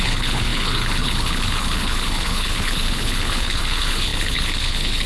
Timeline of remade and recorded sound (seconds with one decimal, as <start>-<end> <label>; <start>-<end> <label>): 0.0-5.1 remade